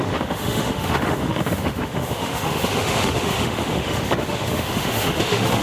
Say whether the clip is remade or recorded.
remade